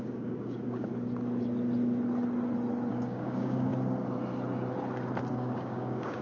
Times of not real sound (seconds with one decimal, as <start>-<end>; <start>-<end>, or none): 0.0-0.9; 2.9-3.7; 5.3-6.2